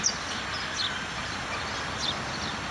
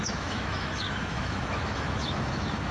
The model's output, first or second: second